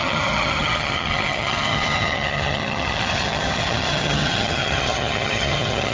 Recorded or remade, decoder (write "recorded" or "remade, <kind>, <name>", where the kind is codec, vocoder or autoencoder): remade, vocoder, HiFi-GAN